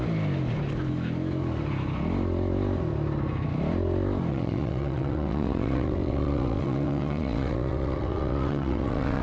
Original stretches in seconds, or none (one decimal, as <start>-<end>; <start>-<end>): 0.0-4.3